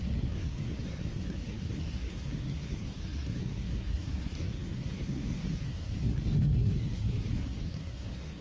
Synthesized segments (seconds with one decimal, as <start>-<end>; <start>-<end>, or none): 0.0-8.4